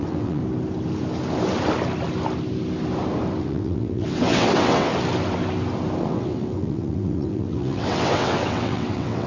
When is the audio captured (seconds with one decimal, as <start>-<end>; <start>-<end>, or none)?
0.4-3.4; 4.9-6.0